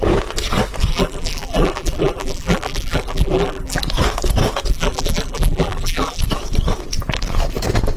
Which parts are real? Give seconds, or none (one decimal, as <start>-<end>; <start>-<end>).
0.0-0.9; 3.8-4.7; 6.2-8.0